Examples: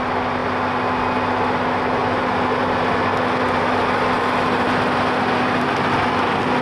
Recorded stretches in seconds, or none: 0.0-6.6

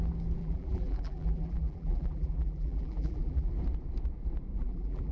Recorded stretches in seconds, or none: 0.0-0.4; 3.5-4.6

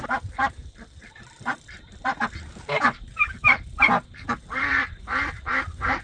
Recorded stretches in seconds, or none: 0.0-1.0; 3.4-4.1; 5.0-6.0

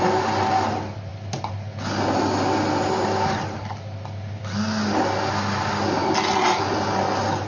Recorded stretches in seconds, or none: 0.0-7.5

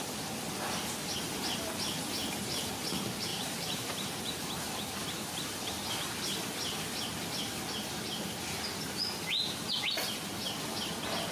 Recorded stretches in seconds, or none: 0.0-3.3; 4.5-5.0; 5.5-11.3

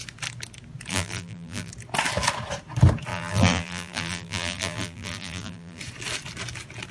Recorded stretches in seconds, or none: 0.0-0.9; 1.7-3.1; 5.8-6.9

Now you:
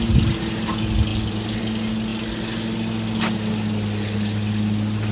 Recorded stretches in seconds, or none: 0.0-1.1; 1.6-5.1

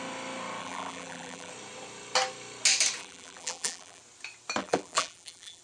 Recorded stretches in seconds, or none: 0.0-0.6; 1.5-3.0; 4.0-4.6